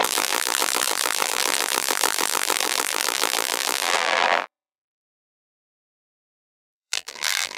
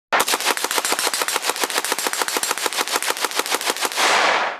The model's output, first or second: first